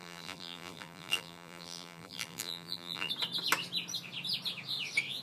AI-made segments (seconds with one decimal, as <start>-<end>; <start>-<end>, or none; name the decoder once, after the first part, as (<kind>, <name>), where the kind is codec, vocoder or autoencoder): 0.0-3.1 (vocoder, BigVGAN v2)

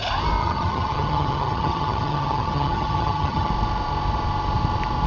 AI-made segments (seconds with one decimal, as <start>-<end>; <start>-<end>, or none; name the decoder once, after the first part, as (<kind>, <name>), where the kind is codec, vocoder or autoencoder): 0.4-3.5 (vocoder, HiFi-GAN)